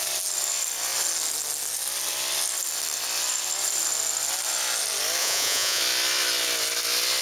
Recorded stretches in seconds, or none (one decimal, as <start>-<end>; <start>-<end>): 0.0-5.2; 5.8-7.2